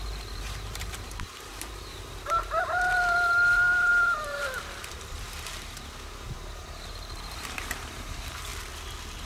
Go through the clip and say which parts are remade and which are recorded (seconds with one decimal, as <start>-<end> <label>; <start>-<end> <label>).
0.0-4.4 remade; 4.4-6.9 recorded; 6.9-8.5 remade; 8.5-9.3 recorded